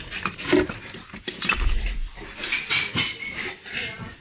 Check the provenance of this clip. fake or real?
real